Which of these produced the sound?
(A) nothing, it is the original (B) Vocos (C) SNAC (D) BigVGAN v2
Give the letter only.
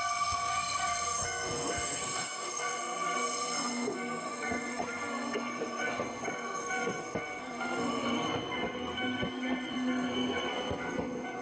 C